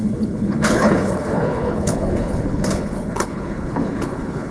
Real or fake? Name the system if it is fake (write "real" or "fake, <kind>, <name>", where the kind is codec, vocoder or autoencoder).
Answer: fake, codec, HILCodec